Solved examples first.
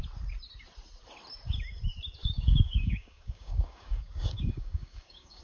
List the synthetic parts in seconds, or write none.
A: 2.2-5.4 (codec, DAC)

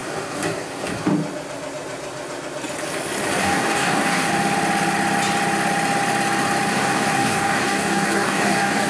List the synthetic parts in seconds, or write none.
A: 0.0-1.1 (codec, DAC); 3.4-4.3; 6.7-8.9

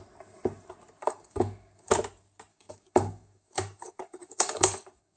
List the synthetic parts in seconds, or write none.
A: 1.0-1.9 (codec, DAC); 2.5-5.2

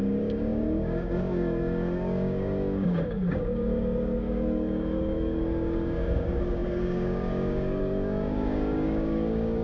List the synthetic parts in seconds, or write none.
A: 0.0-9.6 (codec, DAC)